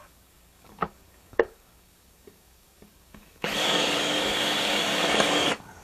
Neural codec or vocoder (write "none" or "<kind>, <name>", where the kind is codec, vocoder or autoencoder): codec, DAC